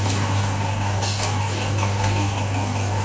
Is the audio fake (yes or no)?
yes